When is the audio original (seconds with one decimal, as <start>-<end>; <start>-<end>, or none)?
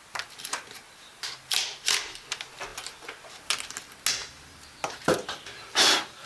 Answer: 0.0-6.3